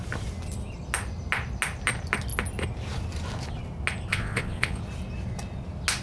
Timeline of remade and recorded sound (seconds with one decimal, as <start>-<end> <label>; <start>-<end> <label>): 0.0-4.1 recorded; 4.1-4.8 remade; 4.8-6.0 recorded